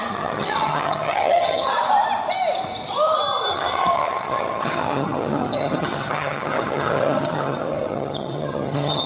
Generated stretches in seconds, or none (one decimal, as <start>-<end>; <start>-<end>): 0.0-1.7; 3.5-9.1